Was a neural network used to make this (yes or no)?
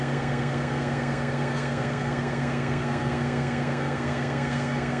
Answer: yes